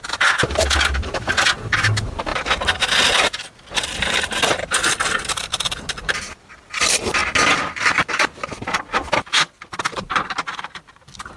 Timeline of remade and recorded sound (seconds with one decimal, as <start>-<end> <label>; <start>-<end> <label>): 0.0-11.4 recorded

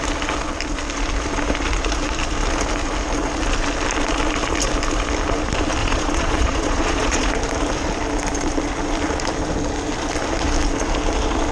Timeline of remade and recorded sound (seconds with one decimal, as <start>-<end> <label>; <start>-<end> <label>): 0.0-5.8 recorded; 5.8-7.3 remade; 7.3-11.5 recorded

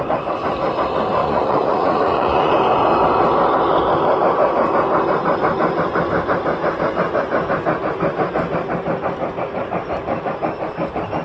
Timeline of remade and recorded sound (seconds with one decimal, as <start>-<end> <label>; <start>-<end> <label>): 0.0-1.2 recorded; 1.2-2.5 remade; 2.5-11.2 recorded

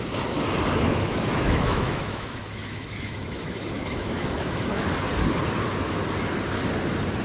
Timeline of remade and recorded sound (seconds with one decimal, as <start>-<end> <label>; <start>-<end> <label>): 0.0-0.9 recorded; 0.9-4.9 remade; 4.9-7.2 recorded

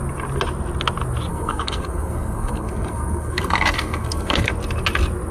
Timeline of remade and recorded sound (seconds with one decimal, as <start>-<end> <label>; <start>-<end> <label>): 0.0-1.3 recorded; 1.3-4.5 remade; 4.5-5.3 recorded